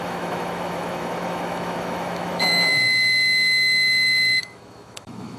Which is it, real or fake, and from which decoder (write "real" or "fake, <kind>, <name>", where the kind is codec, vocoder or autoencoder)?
fake, autoencoder, DAC-VAE